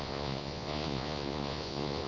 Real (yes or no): no